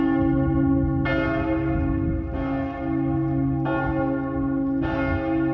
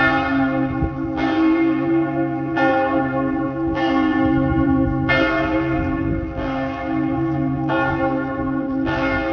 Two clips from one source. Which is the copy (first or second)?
second